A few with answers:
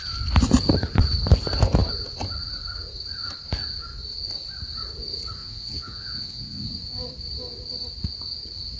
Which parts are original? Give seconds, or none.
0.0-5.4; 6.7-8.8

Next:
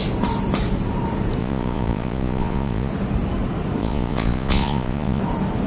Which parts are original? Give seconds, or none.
0.0-1.4; 2.9-3.8; 5.2-5.7

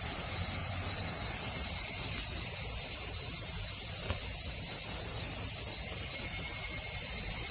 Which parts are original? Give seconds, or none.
0.0-7.5

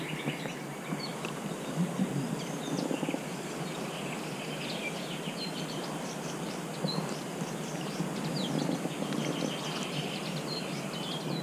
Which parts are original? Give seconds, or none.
0.0-11.4

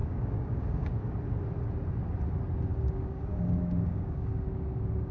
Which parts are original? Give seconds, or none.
0.9-2.7

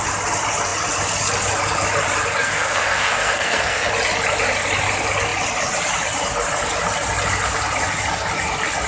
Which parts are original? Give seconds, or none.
0.0-2.4; 3.9-8.9